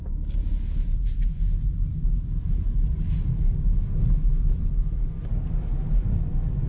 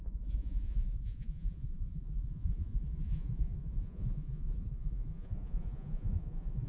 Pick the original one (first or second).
first